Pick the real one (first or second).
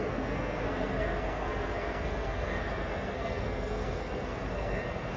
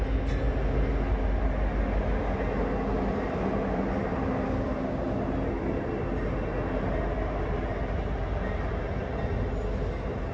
second